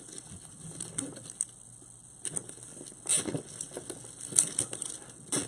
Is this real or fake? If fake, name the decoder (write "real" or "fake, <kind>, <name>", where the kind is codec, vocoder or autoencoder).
real